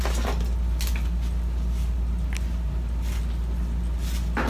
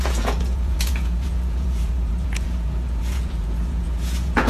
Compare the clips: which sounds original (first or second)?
first